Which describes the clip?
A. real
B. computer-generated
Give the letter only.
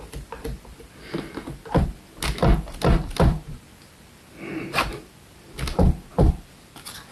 A